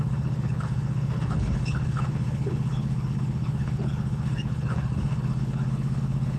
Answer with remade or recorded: remade